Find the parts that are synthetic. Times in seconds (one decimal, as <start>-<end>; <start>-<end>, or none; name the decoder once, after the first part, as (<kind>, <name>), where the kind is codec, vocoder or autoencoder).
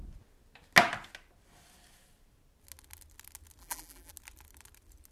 3.6-4.1 (vocoder, BigVGAN v2)